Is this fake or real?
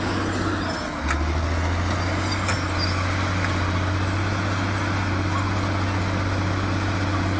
real